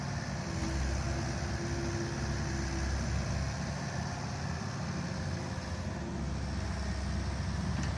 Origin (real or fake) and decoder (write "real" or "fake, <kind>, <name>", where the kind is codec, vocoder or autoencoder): real